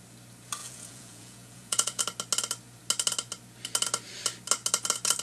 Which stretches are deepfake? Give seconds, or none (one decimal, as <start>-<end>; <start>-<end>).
0.6-2.0